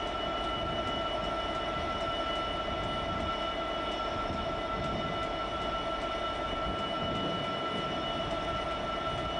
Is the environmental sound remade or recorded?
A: recorded